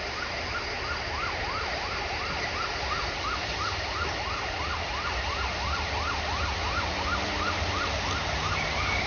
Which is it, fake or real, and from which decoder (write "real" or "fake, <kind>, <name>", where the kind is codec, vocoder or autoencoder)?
real